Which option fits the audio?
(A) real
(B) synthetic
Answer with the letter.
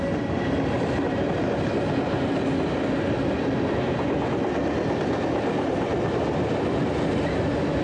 A